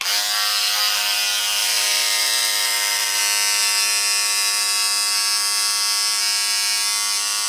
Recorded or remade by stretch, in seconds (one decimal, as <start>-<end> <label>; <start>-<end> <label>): 0.0-1.6 recorded; 1.6-3.2 remade; 3.2-7.5 recorded